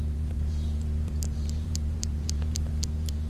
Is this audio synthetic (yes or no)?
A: yes